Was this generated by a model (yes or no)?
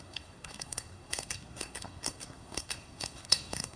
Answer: yes